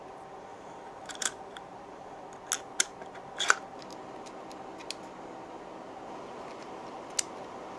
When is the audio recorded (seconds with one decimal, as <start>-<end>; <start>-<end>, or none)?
0.0-0.5; 1.9-7.8